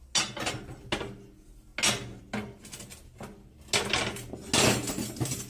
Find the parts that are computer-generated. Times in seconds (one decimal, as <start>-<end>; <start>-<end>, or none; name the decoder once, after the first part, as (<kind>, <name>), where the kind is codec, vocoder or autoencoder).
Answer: none